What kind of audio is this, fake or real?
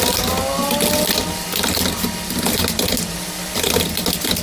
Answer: real